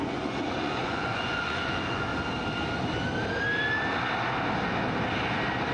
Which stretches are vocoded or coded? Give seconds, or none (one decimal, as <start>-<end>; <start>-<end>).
0.0-2.1